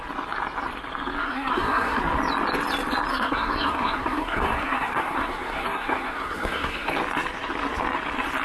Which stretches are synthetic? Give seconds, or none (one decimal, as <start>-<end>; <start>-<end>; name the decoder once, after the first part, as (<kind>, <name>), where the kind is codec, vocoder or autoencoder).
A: 1.2-2.0 (codec, SNAC); 3.1-6.9